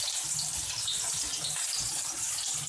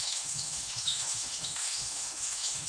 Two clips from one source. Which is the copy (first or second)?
second